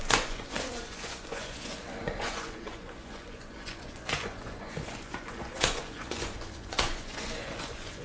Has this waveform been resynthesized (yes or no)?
yes